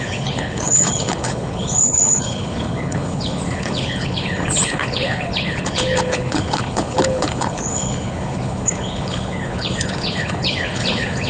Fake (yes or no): yes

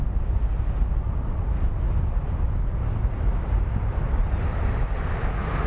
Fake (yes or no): no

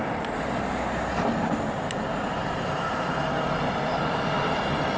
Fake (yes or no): no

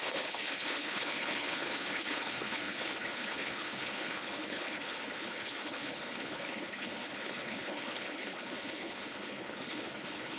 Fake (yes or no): yes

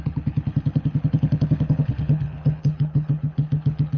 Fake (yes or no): yes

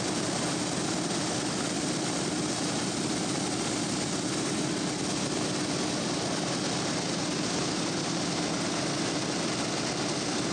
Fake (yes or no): no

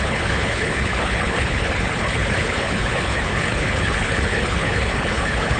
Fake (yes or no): yes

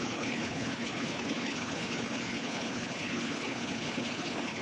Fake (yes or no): yes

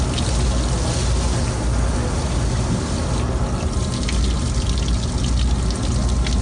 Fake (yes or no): no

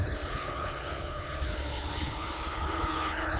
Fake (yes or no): yes